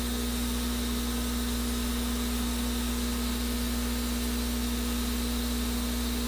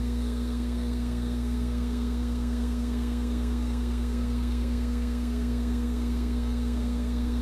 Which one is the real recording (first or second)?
first